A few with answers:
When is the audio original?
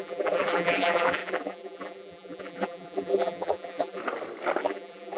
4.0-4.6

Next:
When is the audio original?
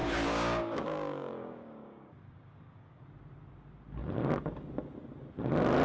3.0-5.8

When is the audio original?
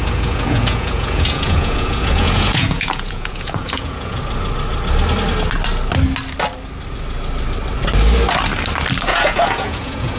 4.2-9.1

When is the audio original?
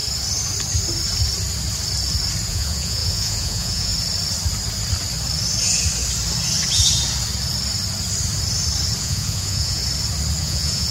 0.0-2.5; 3.9-9.0; 9.8-10.4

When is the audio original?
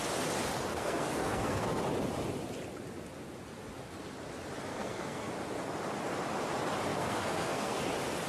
0.0-0.7; 1.8-4.7; 5.3-6.9; 7.8-8.3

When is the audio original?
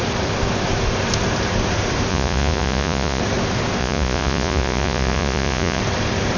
0.0-2.1; 3.2-3.8; 5.8-6.4